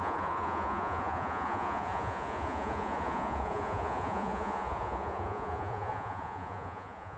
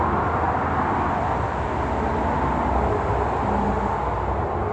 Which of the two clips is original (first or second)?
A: second